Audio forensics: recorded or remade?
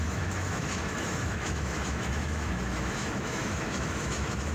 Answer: remade